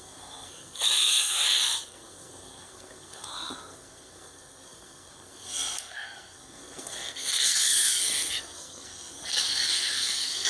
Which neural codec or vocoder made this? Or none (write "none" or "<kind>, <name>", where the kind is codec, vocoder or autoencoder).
codec, SNAC